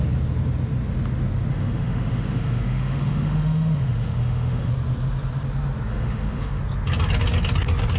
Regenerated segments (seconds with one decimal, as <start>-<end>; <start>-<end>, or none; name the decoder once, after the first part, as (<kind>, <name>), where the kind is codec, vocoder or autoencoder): 1.5-4.7 (autoencoder, DAC-VAE); 5.9-6.6

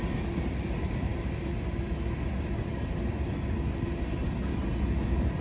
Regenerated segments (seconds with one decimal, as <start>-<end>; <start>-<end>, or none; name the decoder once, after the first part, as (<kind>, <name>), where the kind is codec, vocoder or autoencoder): none

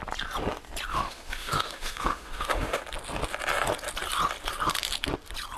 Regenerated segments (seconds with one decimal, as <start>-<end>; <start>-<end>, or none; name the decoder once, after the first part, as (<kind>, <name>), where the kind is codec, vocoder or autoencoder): 0.9-2.8 (autoencoder, DAC-VAE)

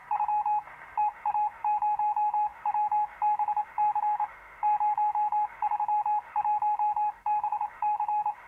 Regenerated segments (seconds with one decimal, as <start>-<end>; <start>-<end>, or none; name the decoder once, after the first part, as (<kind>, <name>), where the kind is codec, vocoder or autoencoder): 1.0-8.5 (autoencoder, DAC-VAE)

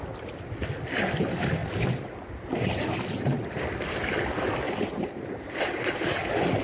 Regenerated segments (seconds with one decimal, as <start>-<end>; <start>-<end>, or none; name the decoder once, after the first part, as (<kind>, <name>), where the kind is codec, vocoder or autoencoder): none

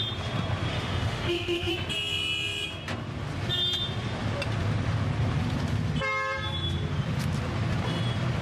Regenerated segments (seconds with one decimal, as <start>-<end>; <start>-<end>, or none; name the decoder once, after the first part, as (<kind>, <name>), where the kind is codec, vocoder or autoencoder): 0.7-1.7 (autoencoder, DAC-VAE)